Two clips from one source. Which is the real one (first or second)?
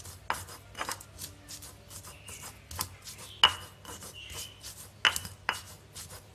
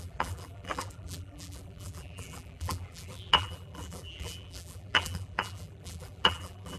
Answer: first